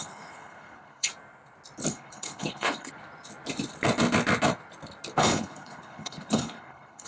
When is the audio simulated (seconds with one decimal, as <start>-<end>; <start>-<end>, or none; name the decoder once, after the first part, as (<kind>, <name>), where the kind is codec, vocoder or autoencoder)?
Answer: 0.0-1.1 (codec, HILCodec); 1.9-2.9; 5.2-7.1